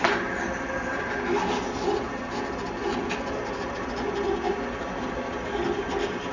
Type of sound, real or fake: real